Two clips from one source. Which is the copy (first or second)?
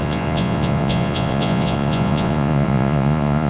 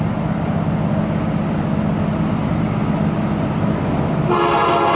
first